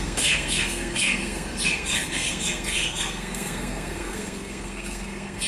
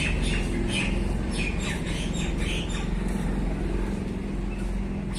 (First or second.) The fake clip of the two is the first